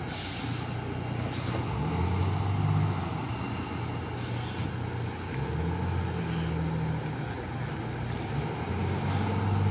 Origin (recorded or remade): recorded